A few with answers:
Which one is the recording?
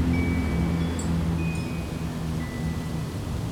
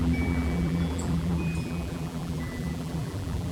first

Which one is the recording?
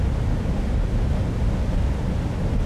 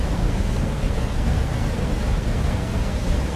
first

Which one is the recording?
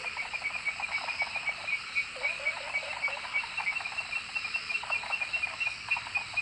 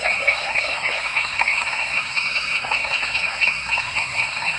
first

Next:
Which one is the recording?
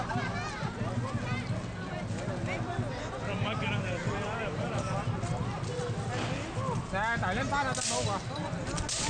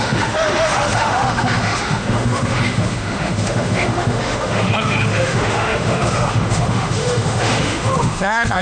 first